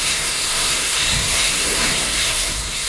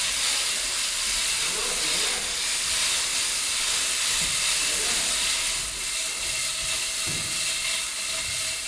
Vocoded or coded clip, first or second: first